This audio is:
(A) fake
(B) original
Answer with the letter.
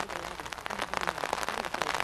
B